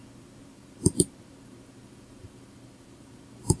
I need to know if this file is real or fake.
fake